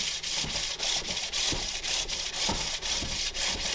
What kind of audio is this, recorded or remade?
recorded